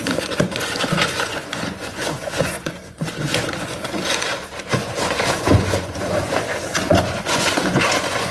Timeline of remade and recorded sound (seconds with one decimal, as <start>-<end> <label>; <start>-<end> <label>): 0.0-8.3 remade